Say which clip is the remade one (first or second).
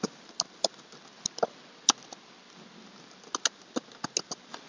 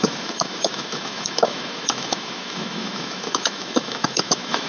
second